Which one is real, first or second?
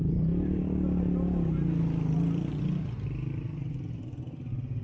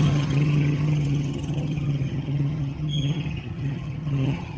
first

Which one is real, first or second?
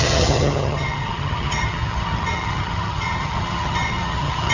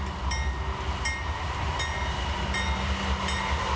second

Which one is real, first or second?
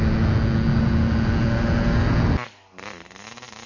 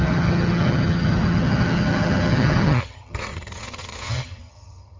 first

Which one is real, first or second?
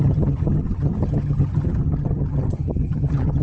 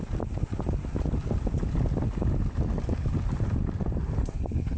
second